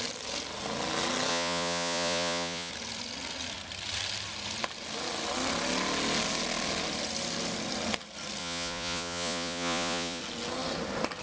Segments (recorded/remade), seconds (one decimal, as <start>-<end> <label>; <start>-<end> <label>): 0.0-1.3 recorded; 1.3-2.7 remade; 2.7-8.4 recorded; 8.4-10.2 remade; 10.2-11.2 recorded